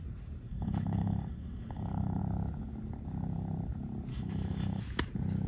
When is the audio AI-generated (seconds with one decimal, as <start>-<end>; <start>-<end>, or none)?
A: 0.5-2.2; 4.1-4.8